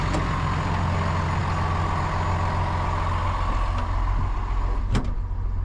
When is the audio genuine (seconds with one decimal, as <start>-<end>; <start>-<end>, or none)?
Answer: 0.0-5.6